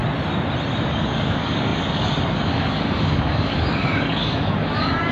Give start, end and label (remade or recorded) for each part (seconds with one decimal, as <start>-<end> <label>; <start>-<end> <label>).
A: 0.0-0.8 recorded; 0.8-5.1 remade